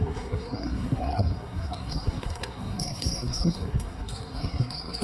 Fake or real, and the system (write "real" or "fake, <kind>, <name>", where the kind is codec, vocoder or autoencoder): fake, codec, SNAC